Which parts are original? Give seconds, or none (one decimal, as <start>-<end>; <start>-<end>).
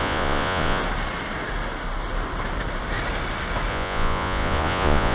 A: 0.8-3.7